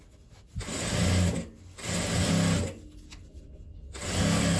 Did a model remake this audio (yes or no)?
no